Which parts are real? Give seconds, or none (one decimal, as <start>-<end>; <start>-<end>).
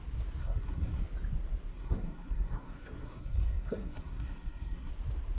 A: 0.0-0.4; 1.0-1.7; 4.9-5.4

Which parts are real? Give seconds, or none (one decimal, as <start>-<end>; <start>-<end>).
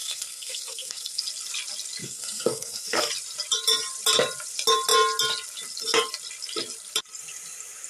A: 1.2-2.0; 3.1-7.9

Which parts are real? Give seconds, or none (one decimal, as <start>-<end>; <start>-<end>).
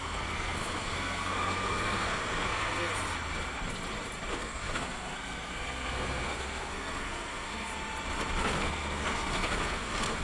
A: 2.9-4.3; 7.7-8.4